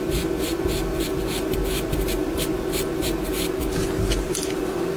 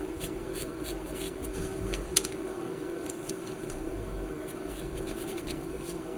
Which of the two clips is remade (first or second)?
second